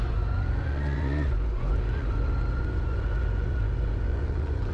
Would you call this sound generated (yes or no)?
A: yes